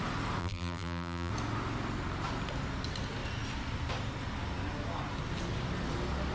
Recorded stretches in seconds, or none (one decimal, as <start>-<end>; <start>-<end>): 0.0-0.4; 1.3-6.3